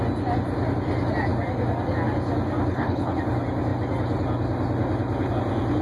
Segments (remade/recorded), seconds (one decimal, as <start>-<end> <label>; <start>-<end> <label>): 0.0-2.7 recorded; 2.7-3.2 remade; 3.2-5.8 recorded